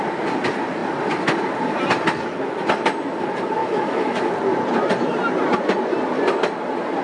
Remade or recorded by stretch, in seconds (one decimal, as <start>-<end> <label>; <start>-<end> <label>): 0.0-3.6 recorded; 3.6-4.3 remade; 4.3-7.0 recorded